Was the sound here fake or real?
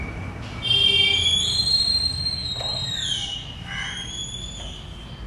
real